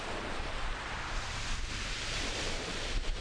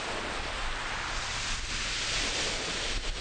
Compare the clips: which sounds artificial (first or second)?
first